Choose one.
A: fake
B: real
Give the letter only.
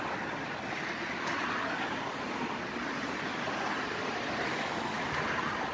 B